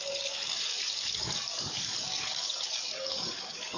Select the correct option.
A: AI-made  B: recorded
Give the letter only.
A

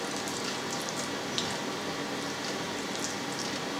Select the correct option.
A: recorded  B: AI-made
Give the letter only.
A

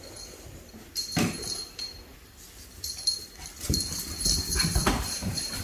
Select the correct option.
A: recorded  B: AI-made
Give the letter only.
B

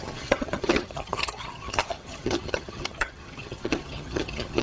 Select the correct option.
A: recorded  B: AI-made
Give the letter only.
B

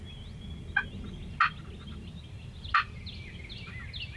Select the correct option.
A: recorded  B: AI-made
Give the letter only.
A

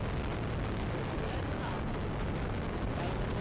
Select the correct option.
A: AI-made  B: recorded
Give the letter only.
B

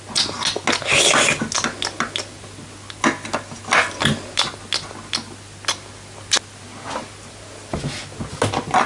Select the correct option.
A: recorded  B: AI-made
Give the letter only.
A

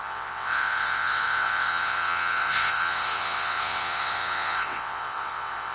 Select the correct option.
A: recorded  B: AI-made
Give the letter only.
B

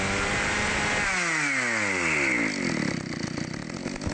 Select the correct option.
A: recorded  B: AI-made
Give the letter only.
A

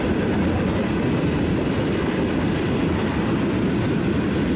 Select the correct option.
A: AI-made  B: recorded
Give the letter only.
B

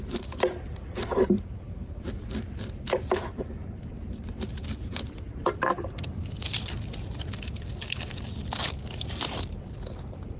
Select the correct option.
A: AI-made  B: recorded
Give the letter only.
A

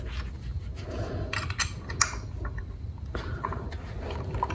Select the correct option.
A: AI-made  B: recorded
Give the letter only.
B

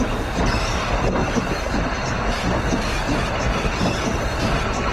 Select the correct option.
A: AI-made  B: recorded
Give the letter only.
B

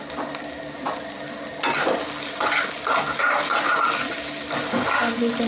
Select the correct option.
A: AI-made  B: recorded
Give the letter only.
B